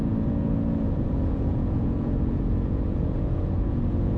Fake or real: fake